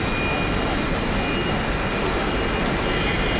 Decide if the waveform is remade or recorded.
recorded